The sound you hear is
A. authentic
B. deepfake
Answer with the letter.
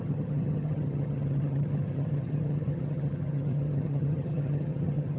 B